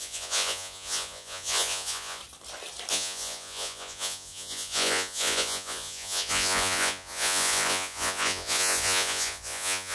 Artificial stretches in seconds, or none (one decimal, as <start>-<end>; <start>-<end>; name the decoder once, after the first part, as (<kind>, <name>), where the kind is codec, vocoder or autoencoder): 0.0-2.2 (vocoder, Vocos); 2.9-9.9